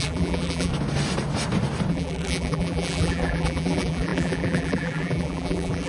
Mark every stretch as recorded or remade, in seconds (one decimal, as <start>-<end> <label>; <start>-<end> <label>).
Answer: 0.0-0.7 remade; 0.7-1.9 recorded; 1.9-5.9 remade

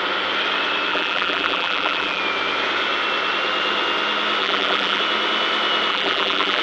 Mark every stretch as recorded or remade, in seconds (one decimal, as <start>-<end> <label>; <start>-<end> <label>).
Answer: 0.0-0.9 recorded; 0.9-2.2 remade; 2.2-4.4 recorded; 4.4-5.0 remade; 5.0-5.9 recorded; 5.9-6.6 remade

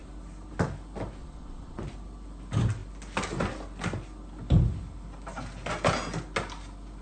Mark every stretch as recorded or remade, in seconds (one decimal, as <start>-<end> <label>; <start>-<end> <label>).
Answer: 0.0-1.2 recorded; 1.2-1.8 remade; 1.8-7.0 recorded

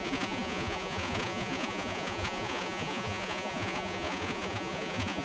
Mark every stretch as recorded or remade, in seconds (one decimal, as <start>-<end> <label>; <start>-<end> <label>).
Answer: 0.0-5.2 remade

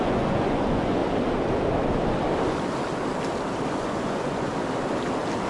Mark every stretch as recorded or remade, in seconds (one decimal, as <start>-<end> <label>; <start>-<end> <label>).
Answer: 0.0-1.0 remade; 1.0-3.7 recorded; 3.7-4.5 remade; 4.5-5.5 recorded